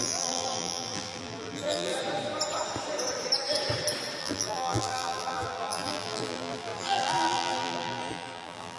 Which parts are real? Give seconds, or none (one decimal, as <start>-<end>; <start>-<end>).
1.9-4.2